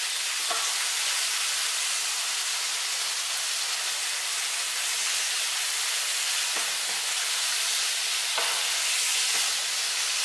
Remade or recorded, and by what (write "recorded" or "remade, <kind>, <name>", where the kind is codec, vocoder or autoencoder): recorded